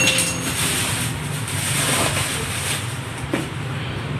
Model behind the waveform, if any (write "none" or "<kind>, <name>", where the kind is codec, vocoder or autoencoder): vocoder, BigVGAN v2